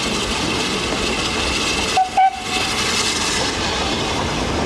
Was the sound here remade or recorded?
recorded